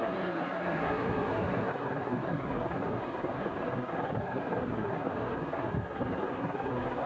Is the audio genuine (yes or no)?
no